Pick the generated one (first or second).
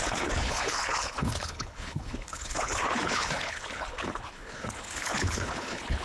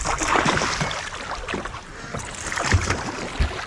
first